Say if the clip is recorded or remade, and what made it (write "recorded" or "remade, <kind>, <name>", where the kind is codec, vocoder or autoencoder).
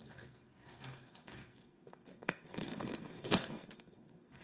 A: remade, codec, SNAC